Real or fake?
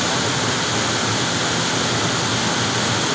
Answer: real